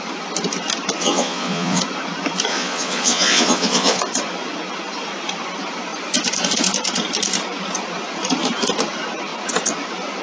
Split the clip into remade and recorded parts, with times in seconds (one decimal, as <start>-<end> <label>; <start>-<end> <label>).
0.0-1.0 recorded; 1.0-1.8 remade; 1.8-2.5 recorded; 2.5-4.0 remade; 4.0-10.2 recorded